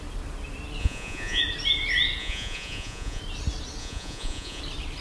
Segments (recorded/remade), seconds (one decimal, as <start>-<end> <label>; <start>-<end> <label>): 0.0-0.8 recorded; 0.8-1.4 remade; 1.4-2.2 recorded; 2.2-3.2 remade; 3.2-3.8 recorded; 3.8-4.6 remade; 4.6-5.0 recorded